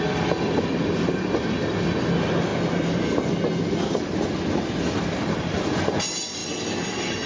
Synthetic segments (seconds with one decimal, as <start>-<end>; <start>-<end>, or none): none

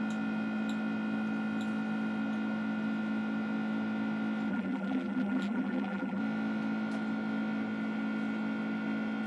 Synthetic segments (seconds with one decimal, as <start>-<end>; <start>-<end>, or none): 4.5-6.2

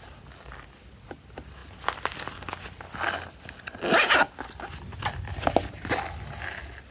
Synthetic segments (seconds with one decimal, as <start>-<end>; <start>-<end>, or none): none

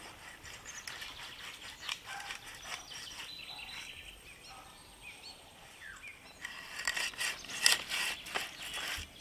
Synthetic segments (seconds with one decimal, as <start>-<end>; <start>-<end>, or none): none

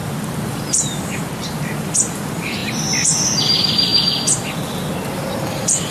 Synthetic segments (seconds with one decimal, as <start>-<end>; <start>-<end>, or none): 0.0-3.9; 5.4-5.9